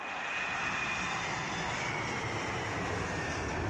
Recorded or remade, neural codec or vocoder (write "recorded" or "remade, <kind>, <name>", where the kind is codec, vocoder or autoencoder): recorded